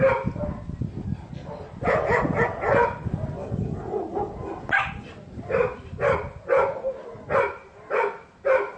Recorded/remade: recorded